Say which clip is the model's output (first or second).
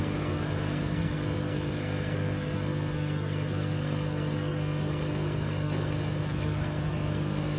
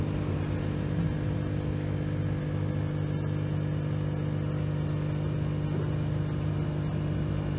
first